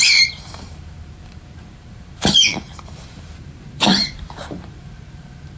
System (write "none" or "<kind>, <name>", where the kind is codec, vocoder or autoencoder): vocoder, BigVGAN v2